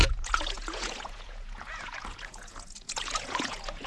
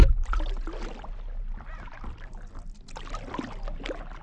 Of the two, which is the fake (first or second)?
first